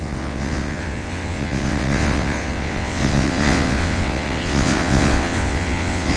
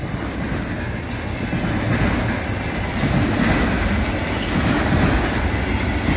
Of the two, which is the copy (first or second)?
first